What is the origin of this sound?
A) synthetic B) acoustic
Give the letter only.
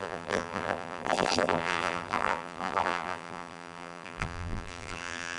A